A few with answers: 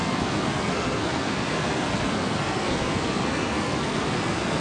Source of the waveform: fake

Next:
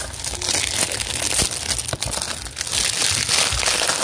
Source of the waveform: real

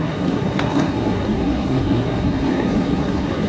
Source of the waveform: fake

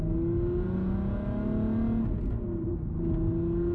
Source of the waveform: real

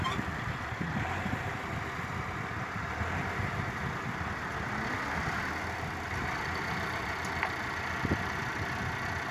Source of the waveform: real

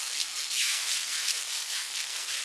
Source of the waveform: fake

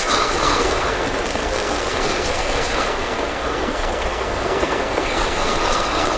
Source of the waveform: fake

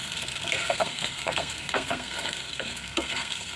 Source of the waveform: fake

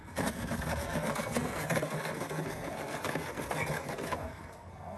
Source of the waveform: fake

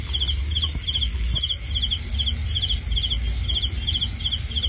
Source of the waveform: real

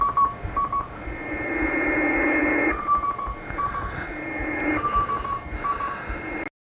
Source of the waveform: real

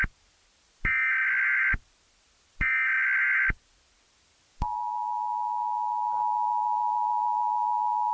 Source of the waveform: real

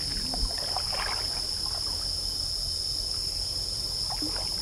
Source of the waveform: real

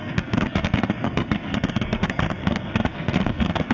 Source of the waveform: fake